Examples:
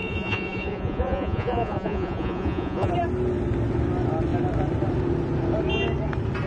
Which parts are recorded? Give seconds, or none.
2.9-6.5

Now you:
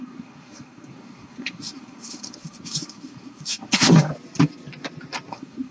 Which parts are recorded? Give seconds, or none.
4.1-5.3

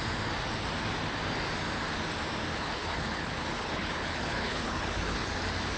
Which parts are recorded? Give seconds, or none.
0.0-2.5; 5.3-5.8